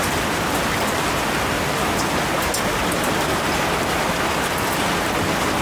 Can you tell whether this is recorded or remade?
recorded